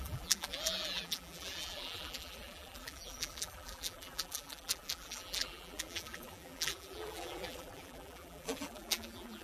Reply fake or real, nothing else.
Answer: fake